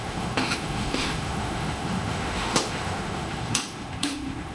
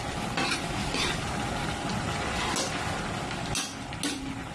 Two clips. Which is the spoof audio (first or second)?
first